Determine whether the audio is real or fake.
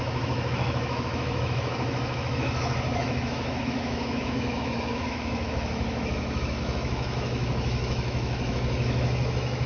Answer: fake